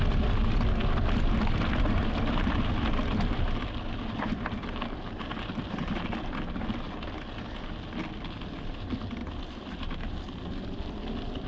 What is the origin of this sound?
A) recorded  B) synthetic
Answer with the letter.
A